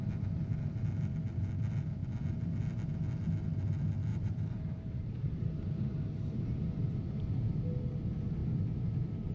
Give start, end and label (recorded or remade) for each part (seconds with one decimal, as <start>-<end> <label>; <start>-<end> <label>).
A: 0.0-4.1 recorded; 4.1-7.2 remade; 7.2-8.4 recorded; 8.4-9.3 remade